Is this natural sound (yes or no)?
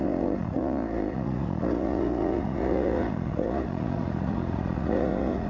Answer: no